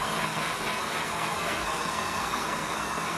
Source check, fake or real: fake